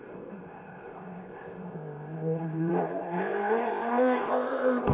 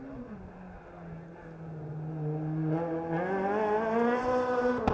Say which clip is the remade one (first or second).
first